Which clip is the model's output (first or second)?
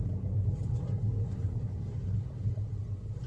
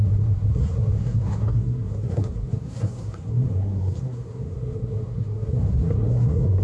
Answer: second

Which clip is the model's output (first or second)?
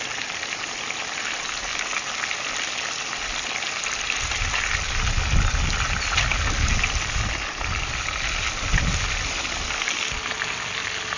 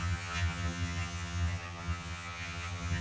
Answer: second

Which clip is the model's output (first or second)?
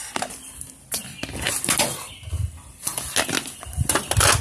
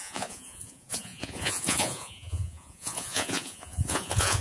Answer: second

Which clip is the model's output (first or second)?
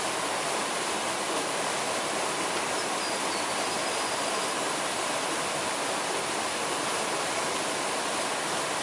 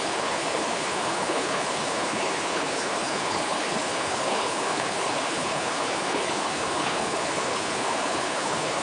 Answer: second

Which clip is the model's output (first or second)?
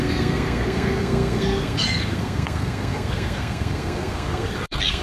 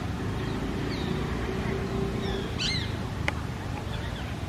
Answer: first